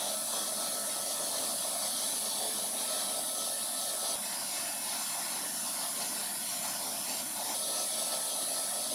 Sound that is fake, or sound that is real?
real